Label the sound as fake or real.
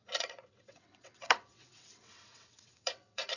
fake